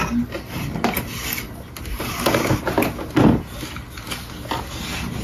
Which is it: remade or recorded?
recorded